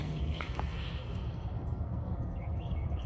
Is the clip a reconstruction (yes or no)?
yes